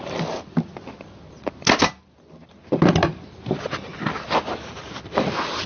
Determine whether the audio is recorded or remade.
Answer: recorded